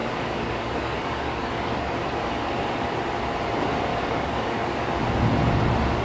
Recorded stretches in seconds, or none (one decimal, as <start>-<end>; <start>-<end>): 2.5-3.9; 5.0-6.0